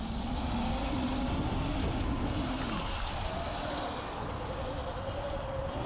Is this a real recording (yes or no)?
yes